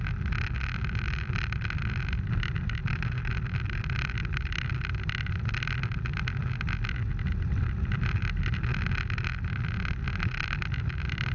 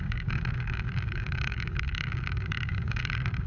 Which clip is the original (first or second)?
first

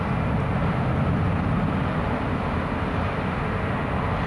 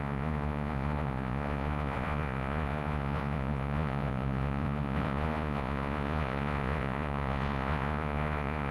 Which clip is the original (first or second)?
first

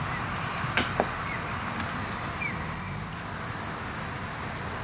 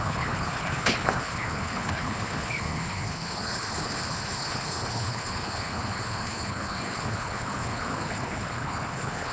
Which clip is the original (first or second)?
first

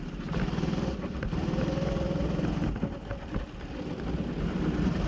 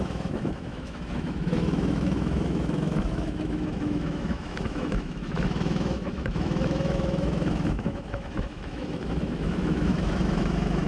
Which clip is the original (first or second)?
first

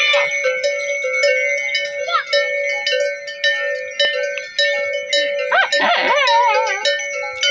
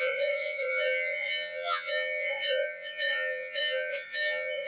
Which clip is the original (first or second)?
first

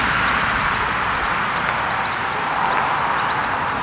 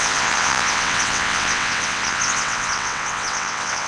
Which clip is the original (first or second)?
first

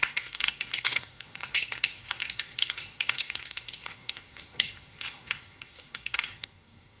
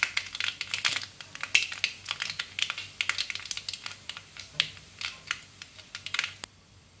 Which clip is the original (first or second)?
second